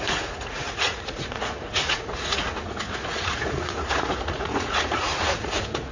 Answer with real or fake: fake